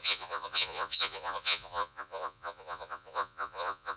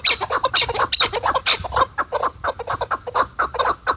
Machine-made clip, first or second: first